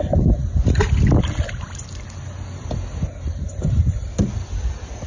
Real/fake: real